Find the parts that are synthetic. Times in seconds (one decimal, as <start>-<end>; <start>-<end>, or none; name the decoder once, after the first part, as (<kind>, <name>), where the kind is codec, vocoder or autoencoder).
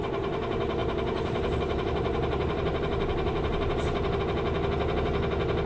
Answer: 0.8-4.2 (vocoder, BigVGAN v2)